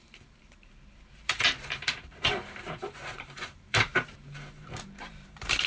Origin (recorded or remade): remade